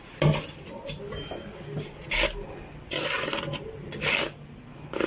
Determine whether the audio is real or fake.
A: real